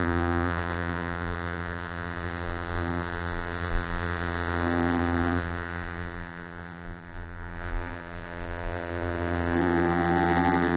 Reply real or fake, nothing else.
fake